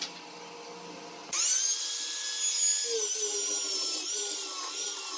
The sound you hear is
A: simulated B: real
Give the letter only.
B